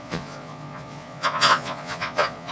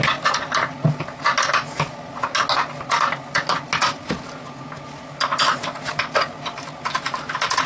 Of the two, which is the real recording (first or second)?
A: second